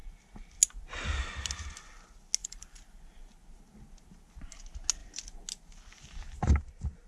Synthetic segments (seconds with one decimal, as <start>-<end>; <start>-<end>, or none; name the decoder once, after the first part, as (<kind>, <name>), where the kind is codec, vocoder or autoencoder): 2.4-3.0 (vocoder, BigVGAN v2)